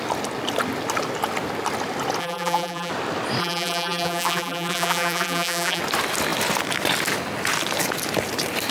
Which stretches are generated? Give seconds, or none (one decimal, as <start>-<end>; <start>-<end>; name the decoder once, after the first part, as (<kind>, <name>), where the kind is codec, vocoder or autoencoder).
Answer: 2.2-2.9 (vocoder, BigVGAN v2); 3.4-5.8